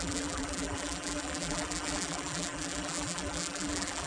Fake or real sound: fake